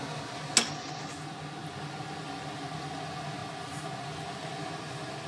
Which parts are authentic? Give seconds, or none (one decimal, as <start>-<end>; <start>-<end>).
0.0-5.3

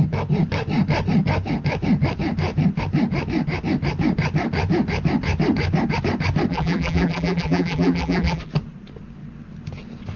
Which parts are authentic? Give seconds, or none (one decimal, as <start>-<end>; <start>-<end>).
0.0-6.5; 8.4-10.2

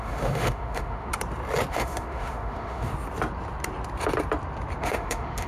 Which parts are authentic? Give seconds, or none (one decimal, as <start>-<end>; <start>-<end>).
1.1-1.7; 2.9-4.8

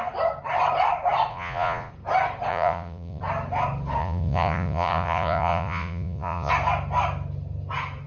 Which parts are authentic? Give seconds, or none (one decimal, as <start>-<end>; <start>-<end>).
0.0-1.3; 1.9-2.5; 3.2-4.0; 6.5-8.1

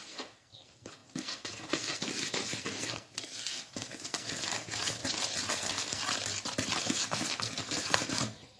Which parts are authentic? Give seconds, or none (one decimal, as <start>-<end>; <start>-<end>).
5.0-5.5; 6.0-6.8

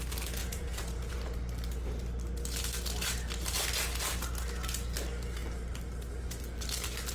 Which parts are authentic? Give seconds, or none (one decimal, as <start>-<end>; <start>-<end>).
0.0-0.4; 1.1-7.1